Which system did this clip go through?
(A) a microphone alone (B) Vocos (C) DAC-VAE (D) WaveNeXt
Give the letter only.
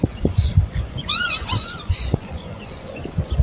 B